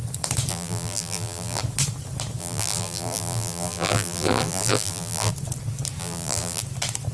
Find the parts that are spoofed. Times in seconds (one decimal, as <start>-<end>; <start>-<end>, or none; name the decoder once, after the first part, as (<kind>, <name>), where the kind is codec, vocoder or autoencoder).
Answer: 0.5-1.6 (vocoder, BigVGAN v2); 2.4-5.3; 6.0-6.6

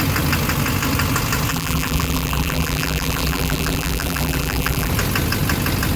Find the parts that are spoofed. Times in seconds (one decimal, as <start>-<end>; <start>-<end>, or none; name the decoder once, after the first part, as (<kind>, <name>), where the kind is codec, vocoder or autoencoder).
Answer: 1.5-4.9 (vocoder, BigVGAN v2)

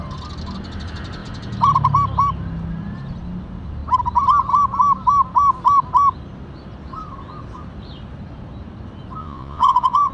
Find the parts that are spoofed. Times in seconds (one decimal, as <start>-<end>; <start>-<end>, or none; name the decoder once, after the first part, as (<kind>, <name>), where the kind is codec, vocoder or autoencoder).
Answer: 9.2-10.1 (vocoder, Vocos)

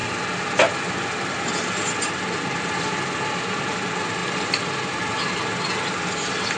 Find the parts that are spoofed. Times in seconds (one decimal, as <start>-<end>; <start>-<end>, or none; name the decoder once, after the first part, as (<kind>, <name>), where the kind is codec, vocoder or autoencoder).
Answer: none

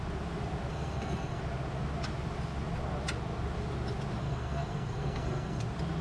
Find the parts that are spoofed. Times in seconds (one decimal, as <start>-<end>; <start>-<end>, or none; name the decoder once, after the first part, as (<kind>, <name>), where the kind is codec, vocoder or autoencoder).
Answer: 0.7-1.4 (codec, SNAC); 4.2-5.6